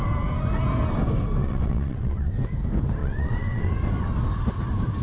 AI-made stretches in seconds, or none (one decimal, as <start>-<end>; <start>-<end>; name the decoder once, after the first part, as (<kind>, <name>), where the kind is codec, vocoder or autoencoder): 1.4-2.3 (vocoder, WaveNeXt); 3.0-3.7